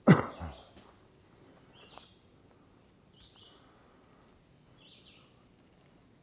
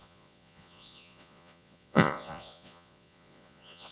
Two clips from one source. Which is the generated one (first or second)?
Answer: second